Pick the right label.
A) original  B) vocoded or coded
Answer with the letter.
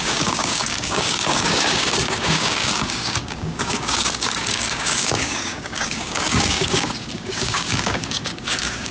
B